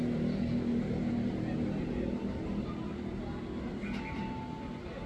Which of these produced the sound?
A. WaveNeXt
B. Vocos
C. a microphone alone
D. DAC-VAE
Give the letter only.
C